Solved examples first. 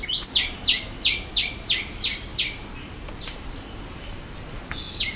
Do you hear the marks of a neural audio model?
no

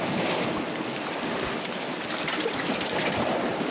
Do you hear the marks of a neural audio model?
no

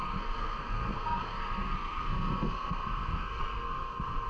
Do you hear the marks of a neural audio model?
yes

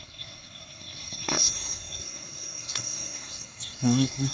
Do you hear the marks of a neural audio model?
yes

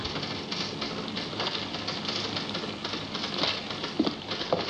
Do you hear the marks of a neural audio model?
no